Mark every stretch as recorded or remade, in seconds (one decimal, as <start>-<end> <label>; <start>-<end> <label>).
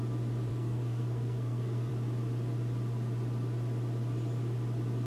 0.0-0.5 recorded; 0.5-1.9 remade; 1.9-5.1 recorded